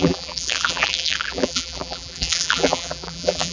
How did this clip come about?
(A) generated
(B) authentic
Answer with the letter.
A